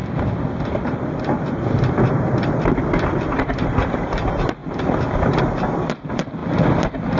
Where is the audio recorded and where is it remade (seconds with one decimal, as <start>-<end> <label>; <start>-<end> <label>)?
0.0-4.6 remade; 4.6-5.4 recorded; 5.4-6.4 remade; 6.4-7.2 recorded